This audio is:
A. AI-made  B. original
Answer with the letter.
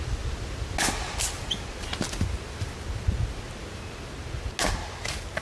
B